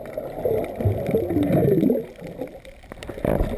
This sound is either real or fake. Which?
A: real